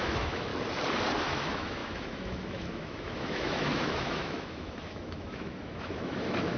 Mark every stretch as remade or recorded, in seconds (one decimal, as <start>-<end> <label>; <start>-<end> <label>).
0.0-0.5 remade; 0.5-1.2 recorded; 1.2-6.6 remade